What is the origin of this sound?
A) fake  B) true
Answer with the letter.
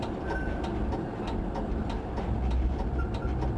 B